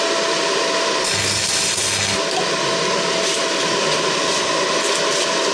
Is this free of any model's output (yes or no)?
yes